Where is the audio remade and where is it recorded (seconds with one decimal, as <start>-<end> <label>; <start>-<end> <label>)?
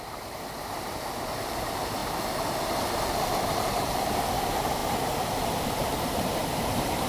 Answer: 0.0-2.0 remade; 2.0-3.4 recorded; 3.4-7.1 remade